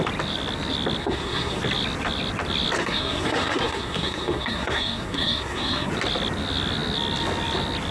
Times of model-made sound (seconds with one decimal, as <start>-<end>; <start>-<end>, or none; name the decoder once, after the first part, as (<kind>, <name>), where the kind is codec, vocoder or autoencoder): 1.0-1.6 (codec, SNAC); 2.8-5.9